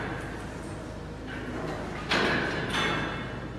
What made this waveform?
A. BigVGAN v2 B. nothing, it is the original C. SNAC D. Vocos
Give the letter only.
B